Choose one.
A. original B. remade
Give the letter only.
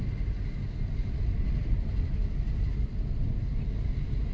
A